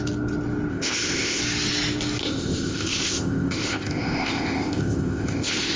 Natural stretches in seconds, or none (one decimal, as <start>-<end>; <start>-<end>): 0.0-0.7; 1.4-2.2